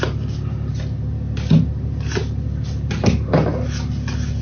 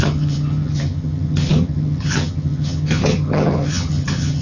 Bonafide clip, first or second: first